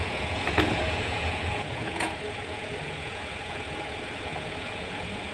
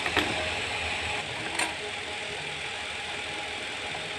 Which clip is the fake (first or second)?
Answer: first